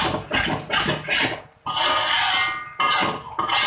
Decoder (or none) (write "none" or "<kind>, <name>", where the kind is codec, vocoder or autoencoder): none